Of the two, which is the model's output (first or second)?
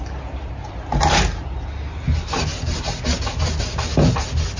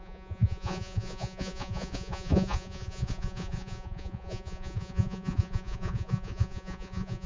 second